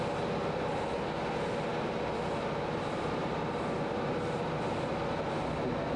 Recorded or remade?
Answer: recorded